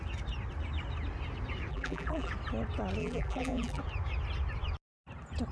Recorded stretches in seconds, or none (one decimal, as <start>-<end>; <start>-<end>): 0.0-1.7; 2.3-3.0; 3.8-5.5